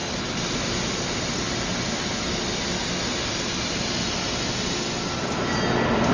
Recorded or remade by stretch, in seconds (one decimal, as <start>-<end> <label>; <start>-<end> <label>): 0.0-6.1 recorded